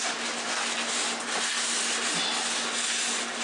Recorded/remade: recorded